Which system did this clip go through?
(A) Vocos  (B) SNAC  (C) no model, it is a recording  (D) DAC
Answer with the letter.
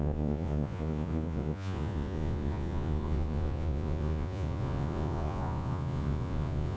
A